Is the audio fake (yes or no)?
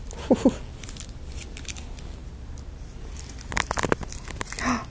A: no